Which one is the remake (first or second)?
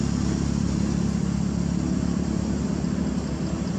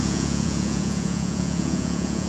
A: second